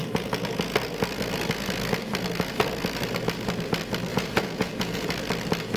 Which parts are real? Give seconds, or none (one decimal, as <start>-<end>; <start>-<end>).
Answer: 0.0-4.1; 5.1-5.8